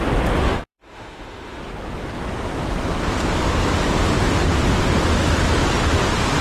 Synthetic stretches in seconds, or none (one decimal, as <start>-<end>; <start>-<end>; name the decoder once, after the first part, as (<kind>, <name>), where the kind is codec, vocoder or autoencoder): 0.4-1.6 (autoencoder, DAC-VAE)